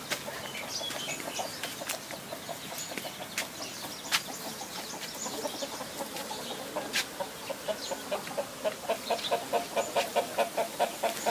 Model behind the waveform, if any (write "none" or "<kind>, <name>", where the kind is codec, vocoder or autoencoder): none